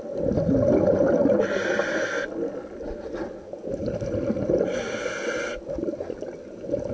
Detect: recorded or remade recorded